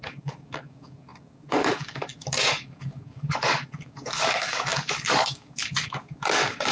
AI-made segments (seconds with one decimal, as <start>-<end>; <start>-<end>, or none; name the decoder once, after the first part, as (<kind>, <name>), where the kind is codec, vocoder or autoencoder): 0.0-6.7 (codec, DAC)